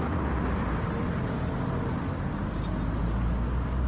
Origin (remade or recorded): recorded